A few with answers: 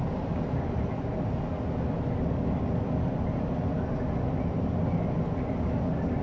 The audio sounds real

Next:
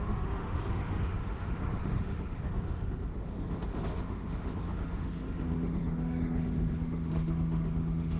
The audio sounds fake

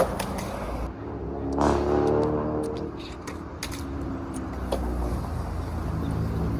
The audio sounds real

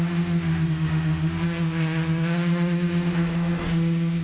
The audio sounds fake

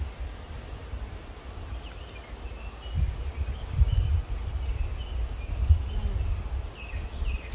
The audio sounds real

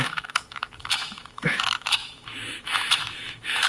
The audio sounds fake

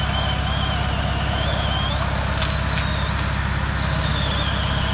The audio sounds real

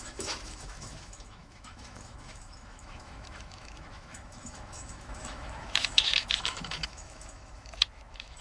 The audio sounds fake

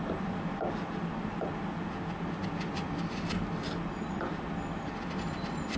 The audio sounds real